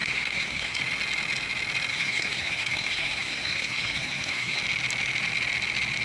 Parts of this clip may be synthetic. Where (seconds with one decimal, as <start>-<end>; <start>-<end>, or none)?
0.0-0.8; 1.9-4.6